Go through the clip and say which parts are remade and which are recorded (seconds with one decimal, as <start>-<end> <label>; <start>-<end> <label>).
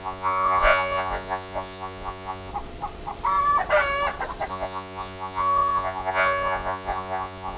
0.0-2.5 remade; 2.5-4.5 recorded; 4.5-7.6 remade